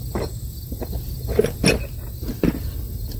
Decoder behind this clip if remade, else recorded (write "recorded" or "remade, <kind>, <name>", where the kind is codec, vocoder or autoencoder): recorded